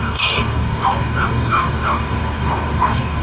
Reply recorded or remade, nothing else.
remade